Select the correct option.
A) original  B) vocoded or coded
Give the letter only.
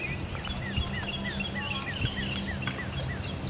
A